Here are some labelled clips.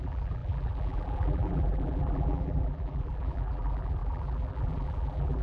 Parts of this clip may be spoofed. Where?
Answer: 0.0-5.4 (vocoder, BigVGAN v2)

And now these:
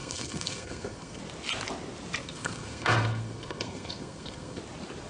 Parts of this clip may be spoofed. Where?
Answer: 0.0-1.2 (codec, SNAC); 2.2-4.6